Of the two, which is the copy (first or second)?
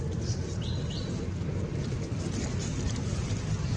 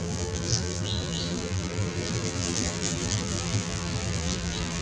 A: second